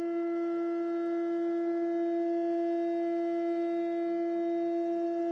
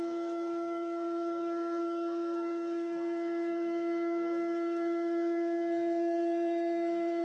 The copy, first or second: second